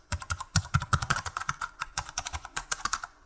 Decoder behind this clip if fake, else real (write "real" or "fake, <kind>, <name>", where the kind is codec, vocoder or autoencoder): fake, vocoder, Vocos